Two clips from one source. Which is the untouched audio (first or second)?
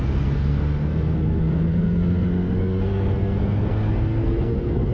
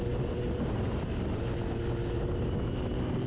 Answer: second